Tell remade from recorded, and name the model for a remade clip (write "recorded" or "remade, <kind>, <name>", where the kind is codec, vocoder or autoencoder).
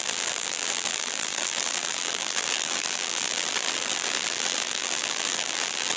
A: remade, vocoder, BigVGAN v2